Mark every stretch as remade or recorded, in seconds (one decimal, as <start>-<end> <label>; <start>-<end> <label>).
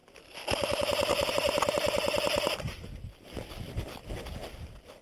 0.0-5.0 recorded